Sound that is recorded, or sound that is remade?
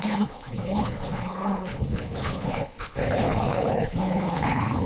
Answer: remade